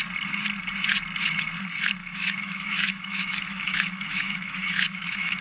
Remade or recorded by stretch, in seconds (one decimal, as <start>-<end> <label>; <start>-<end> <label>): 0.0-2.0 recorded; 2.0-5.4 remade